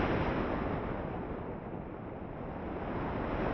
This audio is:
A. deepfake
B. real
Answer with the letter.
B